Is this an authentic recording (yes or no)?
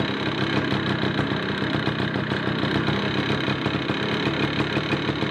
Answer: yes